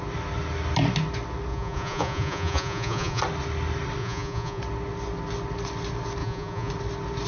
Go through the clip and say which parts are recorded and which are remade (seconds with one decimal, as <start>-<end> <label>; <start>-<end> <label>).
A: 0.0-1.5 recorded; 1.5-3.2 remade; 3.2-4.0 recorded; 4.0-4.6 remade; 4.6-6.2 recorded; 6.2-6.7 remade; 6.7-7.3 recorded